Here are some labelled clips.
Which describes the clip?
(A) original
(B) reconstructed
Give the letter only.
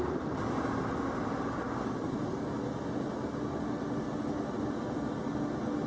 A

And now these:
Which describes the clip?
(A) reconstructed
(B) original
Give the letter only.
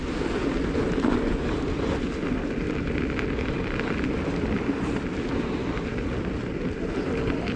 B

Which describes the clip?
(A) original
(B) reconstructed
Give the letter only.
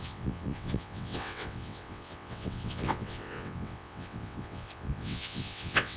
B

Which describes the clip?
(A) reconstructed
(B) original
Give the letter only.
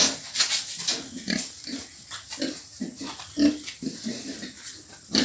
B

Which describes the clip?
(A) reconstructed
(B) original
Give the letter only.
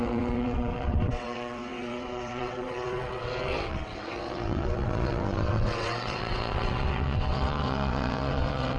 A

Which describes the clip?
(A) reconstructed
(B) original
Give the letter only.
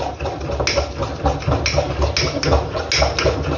B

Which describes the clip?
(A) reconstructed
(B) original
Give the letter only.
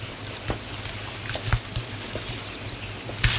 B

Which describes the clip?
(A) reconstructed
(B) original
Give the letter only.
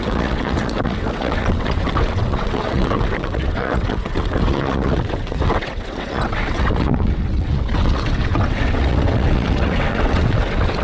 A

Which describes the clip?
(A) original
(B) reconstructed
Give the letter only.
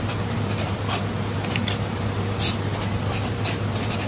A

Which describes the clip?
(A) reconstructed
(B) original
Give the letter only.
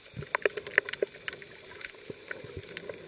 B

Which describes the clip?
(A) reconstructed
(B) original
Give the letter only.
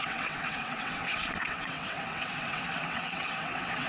A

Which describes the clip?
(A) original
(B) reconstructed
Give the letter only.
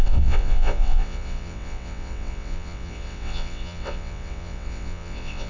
B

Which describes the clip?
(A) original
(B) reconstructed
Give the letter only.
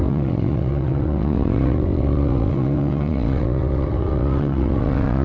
B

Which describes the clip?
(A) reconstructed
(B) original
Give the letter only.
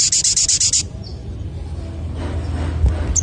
B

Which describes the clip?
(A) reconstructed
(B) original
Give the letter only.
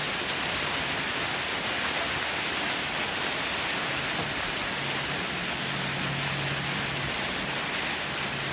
B